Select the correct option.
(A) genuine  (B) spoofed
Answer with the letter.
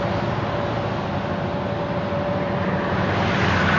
A